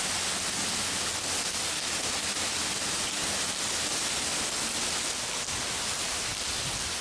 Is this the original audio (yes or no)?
yes